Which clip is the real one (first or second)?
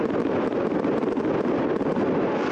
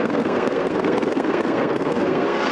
first